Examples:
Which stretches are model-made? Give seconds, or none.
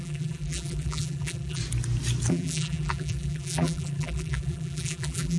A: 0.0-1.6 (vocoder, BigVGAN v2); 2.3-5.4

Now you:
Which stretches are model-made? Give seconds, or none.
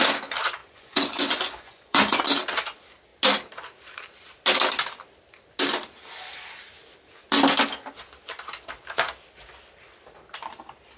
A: 0.6-2.2 (vocoder, Vocos)